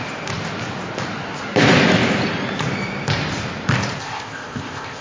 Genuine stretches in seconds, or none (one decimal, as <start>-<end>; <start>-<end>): 0.0-4.0